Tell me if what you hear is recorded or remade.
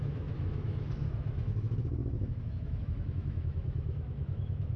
remade